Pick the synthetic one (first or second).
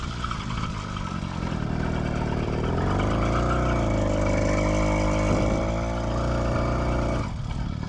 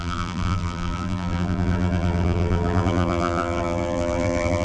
second